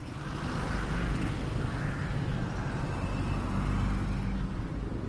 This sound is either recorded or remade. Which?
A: recorded